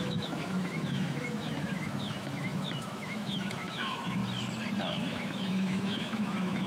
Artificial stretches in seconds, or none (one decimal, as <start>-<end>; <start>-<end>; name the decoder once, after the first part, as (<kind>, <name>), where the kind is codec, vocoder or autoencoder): 0.0-4.2 (autoencoder, DAC-VAE); 4.8-6.7